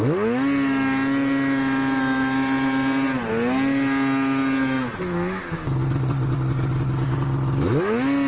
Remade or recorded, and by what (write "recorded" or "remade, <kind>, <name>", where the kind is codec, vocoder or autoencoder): recorded